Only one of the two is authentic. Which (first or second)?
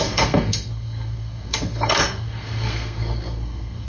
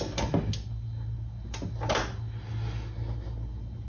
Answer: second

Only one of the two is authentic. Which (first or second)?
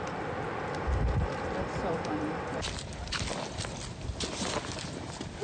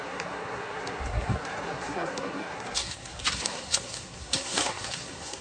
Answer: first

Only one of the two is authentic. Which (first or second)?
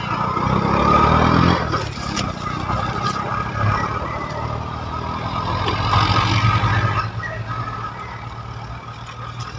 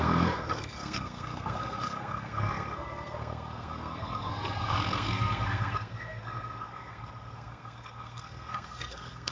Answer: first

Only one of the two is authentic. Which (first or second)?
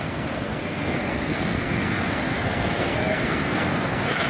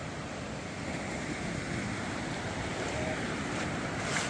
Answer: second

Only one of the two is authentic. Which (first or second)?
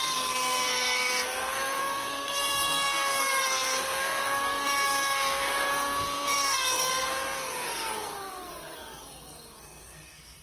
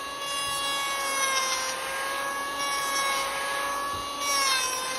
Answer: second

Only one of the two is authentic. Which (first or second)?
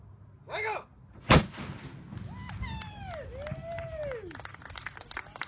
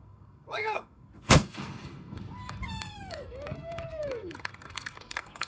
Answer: first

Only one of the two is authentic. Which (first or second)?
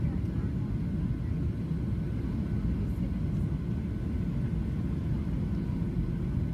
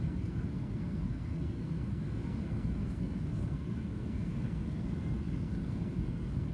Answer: first